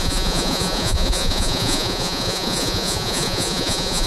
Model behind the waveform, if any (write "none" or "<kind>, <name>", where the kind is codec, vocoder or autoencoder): vocoder, Vocos